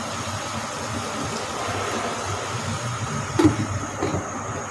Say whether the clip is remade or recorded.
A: recorded